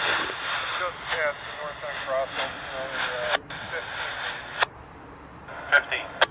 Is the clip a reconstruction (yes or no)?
no